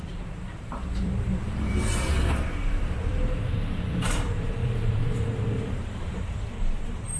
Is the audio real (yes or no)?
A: no